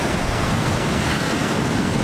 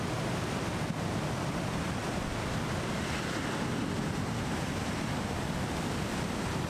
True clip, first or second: second